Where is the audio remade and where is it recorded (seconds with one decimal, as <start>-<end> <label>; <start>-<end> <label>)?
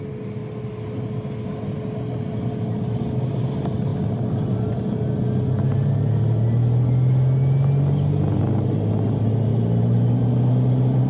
0.0-11.1 recorded